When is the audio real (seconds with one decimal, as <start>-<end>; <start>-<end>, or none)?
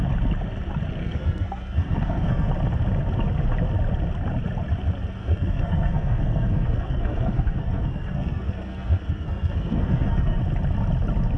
0.0-1.0; 2.5-5.2; 10.4-11.4